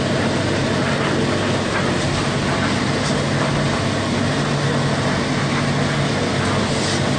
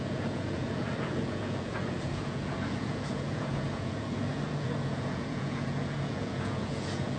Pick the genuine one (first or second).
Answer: first